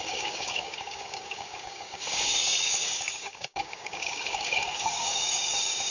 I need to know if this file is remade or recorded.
remade